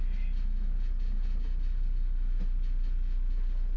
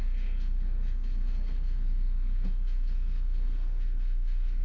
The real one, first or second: first